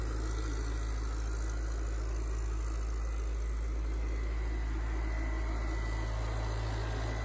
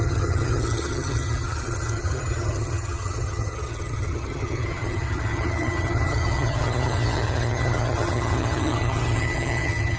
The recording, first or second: first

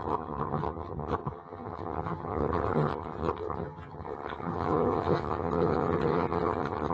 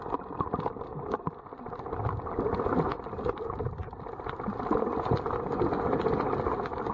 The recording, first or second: second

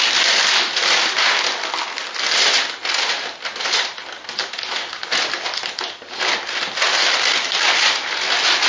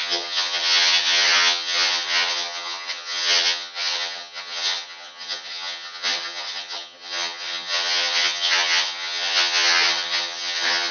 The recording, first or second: first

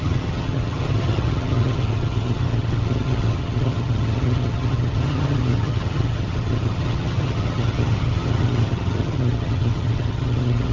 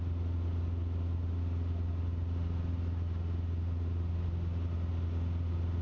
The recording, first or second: second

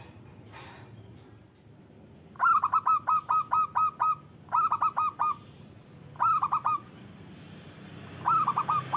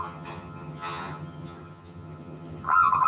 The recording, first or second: first